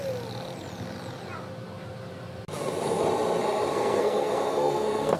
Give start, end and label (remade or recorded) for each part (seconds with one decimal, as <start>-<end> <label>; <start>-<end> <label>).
0.0-3.7 recorded; 3.7-5.2 remade